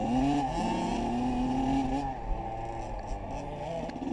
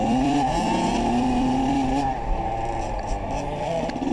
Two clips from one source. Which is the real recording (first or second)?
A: first